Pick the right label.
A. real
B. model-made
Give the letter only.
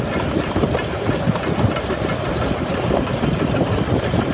A